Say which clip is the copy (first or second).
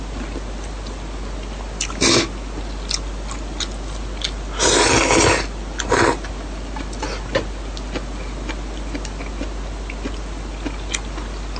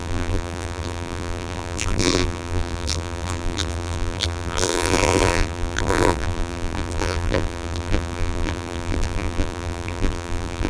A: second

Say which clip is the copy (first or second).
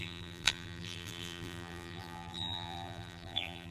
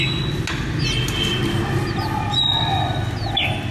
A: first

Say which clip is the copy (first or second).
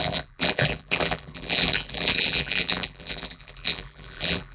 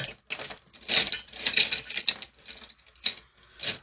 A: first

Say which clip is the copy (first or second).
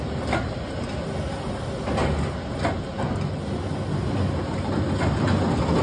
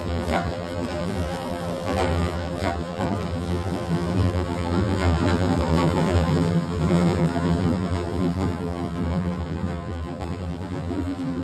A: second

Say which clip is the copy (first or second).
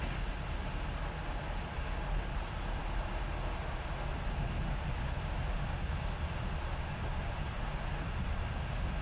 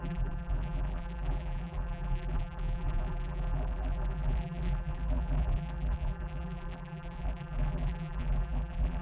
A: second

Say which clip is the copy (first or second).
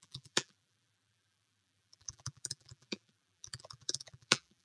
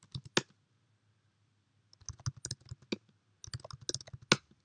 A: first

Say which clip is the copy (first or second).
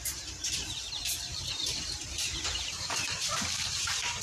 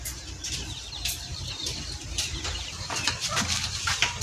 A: first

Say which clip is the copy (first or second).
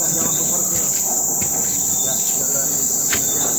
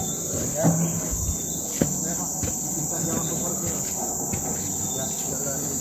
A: first